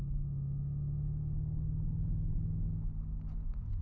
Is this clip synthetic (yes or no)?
no